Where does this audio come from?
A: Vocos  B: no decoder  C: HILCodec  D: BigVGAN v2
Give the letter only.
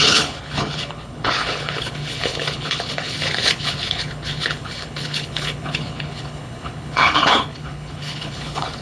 C